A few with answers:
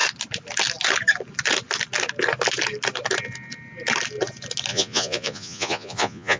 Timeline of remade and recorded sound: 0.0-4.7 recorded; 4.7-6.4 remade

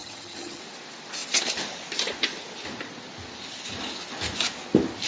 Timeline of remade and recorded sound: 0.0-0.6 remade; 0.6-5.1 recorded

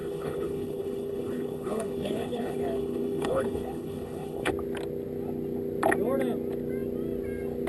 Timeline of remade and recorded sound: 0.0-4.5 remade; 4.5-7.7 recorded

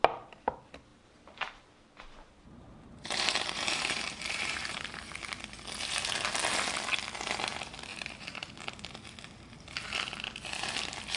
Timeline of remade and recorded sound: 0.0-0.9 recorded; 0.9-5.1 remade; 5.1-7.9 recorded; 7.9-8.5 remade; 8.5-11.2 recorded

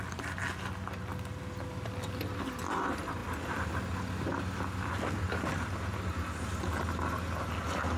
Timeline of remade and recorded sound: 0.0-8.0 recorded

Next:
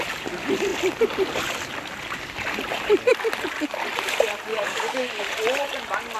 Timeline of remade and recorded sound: 0.0-4.5 recorded; 4.5-5.1 remade; 5.1-6.2 recorded